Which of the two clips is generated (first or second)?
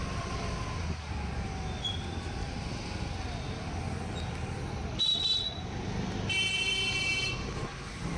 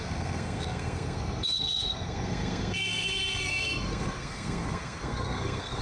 second